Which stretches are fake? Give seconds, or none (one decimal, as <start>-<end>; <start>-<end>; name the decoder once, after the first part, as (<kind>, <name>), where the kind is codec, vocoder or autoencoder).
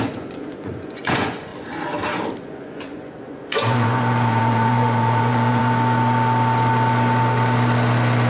0.0-1.5 (vocoder, Vocos); 2.4-5.6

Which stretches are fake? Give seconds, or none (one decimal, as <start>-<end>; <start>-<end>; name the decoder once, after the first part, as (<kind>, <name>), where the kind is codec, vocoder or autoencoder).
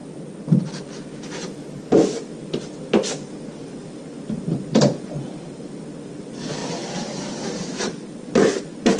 none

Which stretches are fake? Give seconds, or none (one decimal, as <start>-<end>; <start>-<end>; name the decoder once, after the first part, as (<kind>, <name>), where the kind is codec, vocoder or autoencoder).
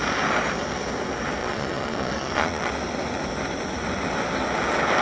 1.4-2.7 (vocoder, Vocos)